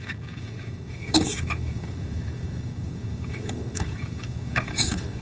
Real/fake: fake